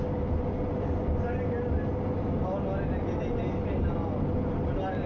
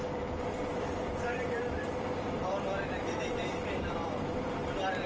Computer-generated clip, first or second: second